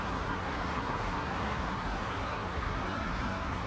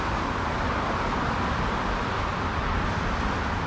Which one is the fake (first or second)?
first